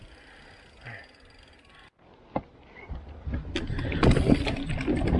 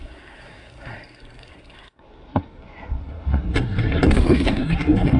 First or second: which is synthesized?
second